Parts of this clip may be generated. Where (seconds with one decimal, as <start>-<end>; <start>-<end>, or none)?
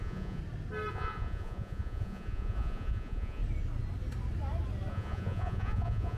0.0-0.4; 0.9-3.4; 4.9-6.2